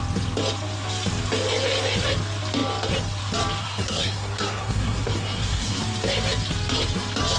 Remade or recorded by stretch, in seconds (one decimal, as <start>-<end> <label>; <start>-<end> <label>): 0.0-3.6 recorded; 3.6-5.8 remade; 5.8-7.4 recorded